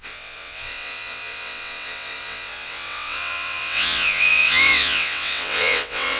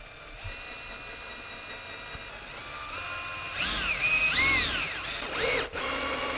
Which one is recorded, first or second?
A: second